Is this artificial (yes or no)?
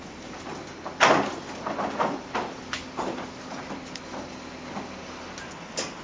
no